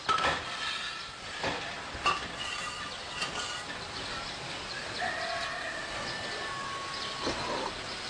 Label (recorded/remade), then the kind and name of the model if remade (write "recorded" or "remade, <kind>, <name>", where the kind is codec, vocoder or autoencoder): recorded